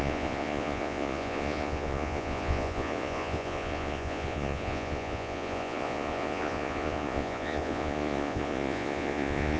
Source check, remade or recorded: remade